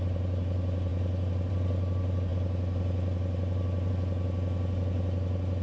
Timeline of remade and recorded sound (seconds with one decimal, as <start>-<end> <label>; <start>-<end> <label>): 0.0-5.6 recorded